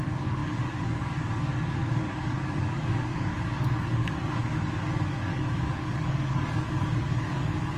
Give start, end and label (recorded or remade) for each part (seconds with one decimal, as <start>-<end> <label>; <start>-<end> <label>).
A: 0.0-7.8 remade